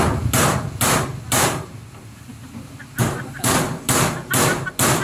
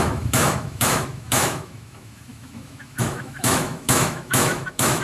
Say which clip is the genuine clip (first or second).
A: first